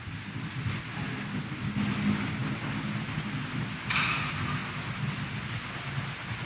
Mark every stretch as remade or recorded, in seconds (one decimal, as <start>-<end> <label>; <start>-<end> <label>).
0.0-6.5 recorded